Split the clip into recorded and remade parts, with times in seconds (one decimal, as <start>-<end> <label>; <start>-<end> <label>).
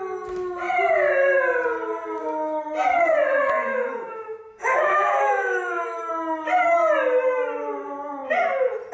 0.0-3.7 recorded; 3.7-6.1 remade; 6.1-8.9 recorded